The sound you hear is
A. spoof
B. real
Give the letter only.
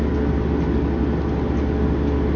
B